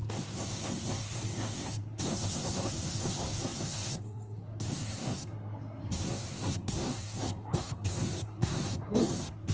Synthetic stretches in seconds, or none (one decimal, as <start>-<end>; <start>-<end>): 0.0-9.5